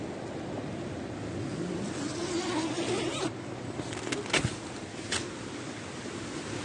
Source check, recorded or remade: recorded